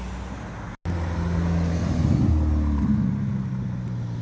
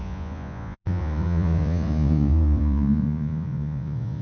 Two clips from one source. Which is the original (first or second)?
first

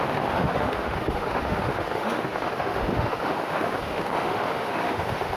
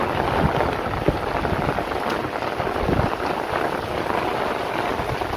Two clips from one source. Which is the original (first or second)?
second